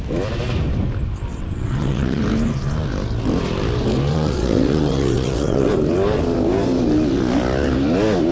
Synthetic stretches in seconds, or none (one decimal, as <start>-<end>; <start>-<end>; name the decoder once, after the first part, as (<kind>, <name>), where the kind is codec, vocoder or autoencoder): 1.3-2.2 (vocoder, WaveNeXt); 4.1-5.7